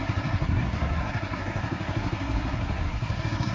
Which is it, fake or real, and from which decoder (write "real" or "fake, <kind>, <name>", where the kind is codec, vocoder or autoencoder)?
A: fake, codec, SNAC